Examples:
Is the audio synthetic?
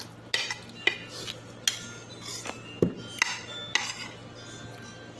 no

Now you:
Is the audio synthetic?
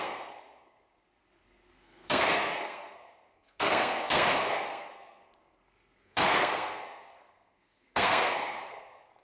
yes